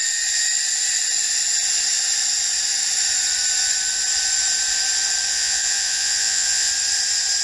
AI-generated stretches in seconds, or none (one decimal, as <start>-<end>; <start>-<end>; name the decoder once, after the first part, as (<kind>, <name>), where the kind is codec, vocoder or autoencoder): 5.3-6.7 (vocoder, Vocos)

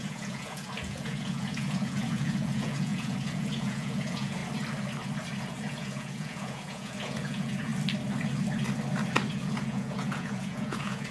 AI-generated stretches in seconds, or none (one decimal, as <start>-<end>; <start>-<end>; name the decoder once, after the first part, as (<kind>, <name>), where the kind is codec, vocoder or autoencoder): 0.0-4.4 (vocoder, Vocos); 5.4-7.7; 9.3-11.1